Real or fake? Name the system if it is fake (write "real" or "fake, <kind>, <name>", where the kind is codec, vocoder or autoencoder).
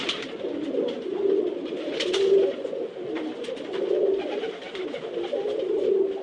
real